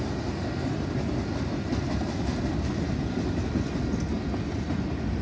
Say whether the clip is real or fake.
real